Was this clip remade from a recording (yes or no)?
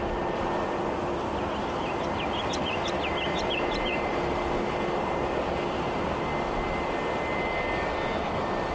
no